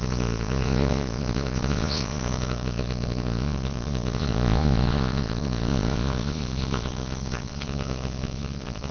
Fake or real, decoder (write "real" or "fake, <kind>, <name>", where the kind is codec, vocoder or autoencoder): fake, vocoder, Vocos